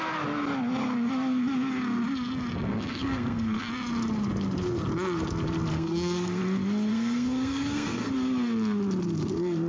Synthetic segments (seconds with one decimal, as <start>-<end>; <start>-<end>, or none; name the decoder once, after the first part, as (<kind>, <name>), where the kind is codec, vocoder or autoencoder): 2.7-3.7 (codec, SNAC); 5.7-6.4; 6.9-8.1